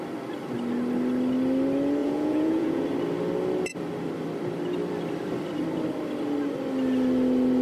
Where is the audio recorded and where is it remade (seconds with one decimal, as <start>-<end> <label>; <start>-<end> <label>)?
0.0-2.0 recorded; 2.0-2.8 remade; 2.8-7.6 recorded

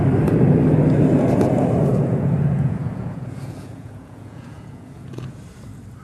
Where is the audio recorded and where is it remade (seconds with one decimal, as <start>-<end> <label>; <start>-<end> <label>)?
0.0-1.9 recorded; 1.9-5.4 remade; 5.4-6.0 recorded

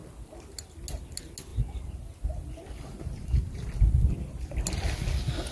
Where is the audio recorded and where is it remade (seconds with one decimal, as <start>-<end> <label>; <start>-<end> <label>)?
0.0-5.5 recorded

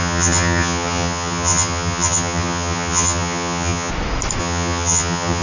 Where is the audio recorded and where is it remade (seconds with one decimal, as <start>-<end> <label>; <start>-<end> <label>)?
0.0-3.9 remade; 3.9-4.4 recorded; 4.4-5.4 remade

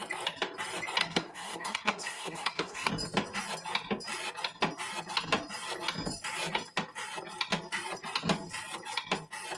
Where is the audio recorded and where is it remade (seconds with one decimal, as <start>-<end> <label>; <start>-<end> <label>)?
0.0-1.0 recorded; 1.0-2.9 remade; 2.9-9.6 recorded

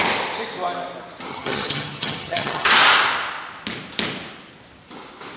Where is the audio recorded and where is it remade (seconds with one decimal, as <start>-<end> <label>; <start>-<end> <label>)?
0.0-1.3 recorded; 1.3-2.7 remade; 2.7-5.4 recorded

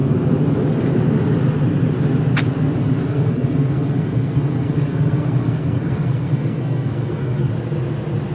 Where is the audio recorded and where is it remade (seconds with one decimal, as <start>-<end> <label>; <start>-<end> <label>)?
0.0-3.1 recorded; 3.1-7.5 remade; 7.5-8.3 recorded

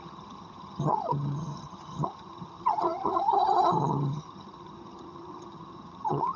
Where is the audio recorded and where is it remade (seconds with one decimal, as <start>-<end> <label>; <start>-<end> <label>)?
0.0-6.4 remade